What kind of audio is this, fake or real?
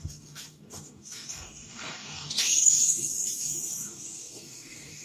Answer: fake